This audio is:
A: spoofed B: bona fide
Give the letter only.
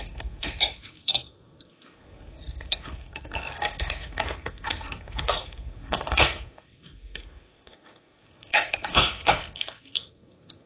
A